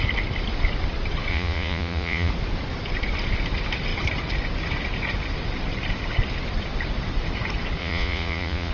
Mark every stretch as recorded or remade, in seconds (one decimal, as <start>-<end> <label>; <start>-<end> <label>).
0.0-1.3 recorded; 1.3-2.3 remade; 2.3-7.8 recorded; 7.8-8.7 remade